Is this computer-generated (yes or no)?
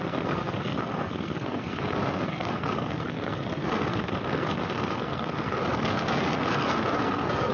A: yes